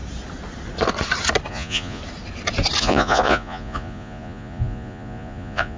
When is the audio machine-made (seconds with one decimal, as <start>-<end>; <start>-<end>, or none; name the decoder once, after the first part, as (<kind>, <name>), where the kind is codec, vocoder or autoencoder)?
1.5-2.0 (vocoder, Vocos); 2.8-5.8